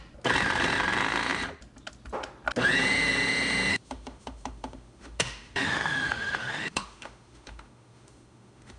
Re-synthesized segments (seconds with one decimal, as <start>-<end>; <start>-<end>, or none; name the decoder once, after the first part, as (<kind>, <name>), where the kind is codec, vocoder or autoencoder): 3.7-8.8 (autoencoder, DAC-VAE)